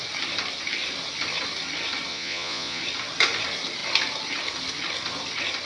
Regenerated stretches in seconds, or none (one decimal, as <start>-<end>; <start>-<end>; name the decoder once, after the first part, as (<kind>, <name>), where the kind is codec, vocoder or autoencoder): 2.1-2.8 (vocoder, Vocos)